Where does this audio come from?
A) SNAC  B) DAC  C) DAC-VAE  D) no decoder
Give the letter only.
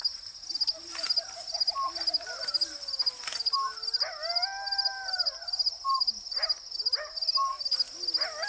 D